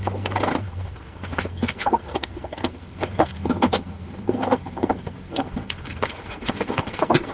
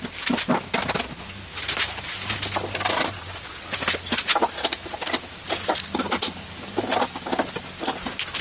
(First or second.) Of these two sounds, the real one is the second